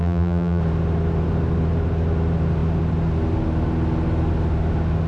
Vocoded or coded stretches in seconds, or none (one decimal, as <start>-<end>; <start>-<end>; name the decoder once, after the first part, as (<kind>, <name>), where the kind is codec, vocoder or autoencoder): 0.0-0.6 (vocoder, BigVGAN v2)